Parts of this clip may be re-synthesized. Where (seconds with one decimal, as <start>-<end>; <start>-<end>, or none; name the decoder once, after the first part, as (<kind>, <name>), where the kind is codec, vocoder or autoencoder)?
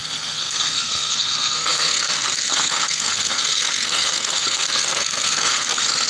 0.0-6.1 (codec, SNAC)